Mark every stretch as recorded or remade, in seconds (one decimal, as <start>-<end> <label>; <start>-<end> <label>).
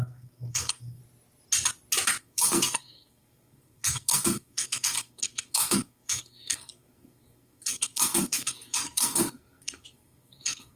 0.0-1.0 remade; 1.0-2.2 recorded; 2.2-10.8 remade